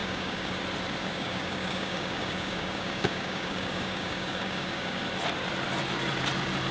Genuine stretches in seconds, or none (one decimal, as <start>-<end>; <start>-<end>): 0.6-1.0; 5.0-6.7